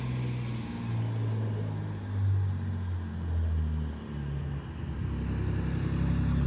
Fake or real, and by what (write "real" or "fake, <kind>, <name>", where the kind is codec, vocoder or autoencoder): real